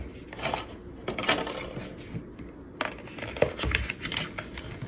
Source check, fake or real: real